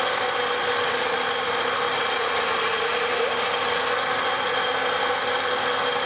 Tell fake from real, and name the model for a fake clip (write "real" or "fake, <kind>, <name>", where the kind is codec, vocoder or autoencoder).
real